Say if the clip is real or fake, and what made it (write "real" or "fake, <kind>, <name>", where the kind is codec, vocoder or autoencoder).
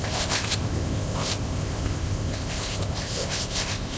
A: fake, codec, ZipCodec